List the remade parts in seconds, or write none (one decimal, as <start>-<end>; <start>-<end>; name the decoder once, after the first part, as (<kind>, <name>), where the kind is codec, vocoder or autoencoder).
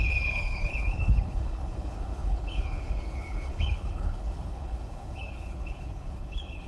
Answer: 0.0-6.7 (codec, HILCodec)